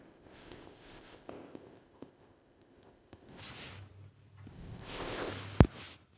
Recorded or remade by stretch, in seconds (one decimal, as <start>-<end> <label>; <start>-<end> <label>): 0.0-3.4 remade; 3.4-4.5 recorded; 4.5-5.3 remade; 5.3-6.2 recorded